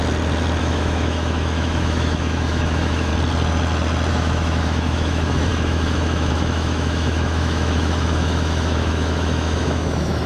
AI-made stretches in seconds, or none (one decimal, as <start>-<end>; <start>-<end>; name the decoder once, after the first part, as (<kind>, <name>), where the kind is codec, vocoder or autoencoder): 0.6-3.1 (autoencoder, DAC-VAE); 4.1-10.3